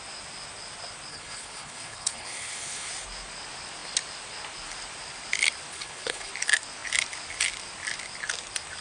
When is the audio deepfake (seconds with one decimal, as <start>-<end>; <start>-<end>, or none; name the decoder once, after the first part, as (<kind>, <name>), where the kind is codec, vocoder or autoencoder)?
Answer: 1.1-2.9 (codec, HILCodec); 5.7-6.3